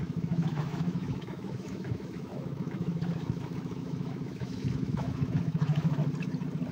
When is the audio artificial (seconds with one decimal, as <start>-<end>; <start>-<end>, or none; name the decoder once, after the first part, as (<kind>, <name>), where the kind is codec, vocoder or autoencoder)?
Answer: 0.0-6.0 (autoencoder, DAC-VAE)

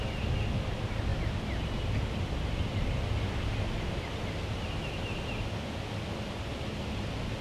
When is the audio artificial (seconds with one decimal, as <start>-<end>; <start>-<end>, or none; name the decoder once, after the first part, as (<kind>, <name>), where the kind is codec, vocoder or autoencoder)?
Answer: none